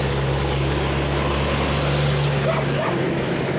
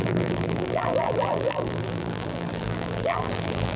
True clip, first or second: first